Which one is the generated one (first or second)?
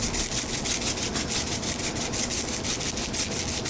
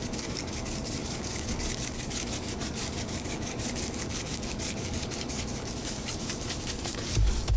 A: second